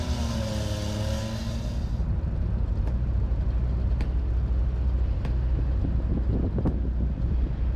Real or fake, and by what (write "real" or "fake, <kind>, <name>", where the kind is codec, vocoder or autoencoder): real